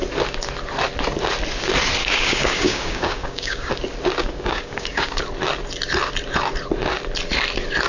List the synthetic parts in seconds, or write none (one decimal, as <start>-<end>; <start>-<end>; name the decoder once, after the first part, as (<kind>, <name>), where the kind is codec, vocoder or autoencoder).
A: 2.0-3.7 (codec, DAC); 4.2-5.2